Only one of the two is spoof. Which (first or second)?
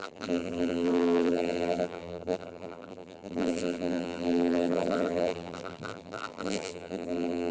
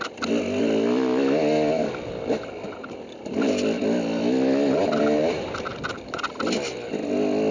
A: first